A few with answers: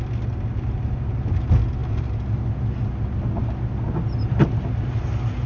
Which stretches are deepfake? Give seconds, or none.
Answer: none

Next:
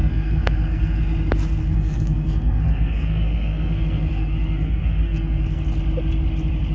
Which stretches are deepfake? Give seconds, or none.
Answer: 0.0-1.0; 1.6-5.6

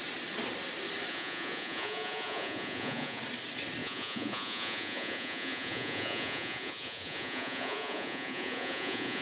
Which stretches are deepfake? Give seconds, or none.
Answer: 1.1-3.2; 3.8-9.2

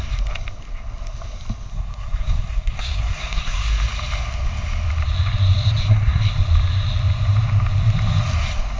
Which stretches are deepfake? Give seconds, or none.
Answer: 1.7-3.7; 5.8-6.3